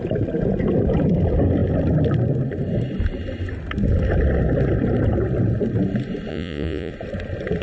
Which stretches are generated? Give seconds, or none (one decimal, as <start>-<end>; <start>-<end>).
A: 6.3-6.9